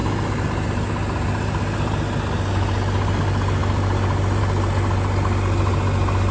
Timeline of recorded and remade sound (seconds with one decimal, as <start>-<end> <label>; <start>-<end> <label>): 0.0-6.3 recorded